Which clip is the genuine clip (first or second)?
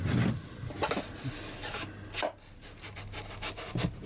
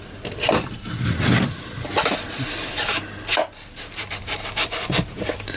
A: first